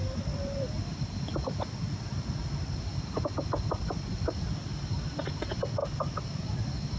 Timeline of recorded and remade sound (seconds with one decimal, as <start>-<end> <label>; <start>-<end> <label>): 0.0-7.0 recorded